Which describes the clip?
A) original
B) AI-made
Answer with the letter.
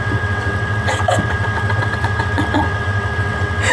B